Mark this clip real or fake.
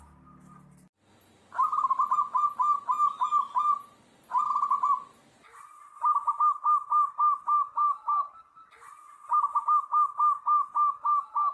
real